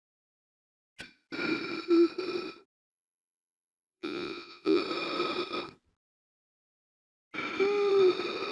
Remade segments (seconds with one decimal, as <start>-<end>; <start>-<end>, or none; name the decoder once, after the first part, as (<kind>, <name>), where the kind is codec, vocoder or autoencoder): 2.9-4.8 (vocoder, Vocos)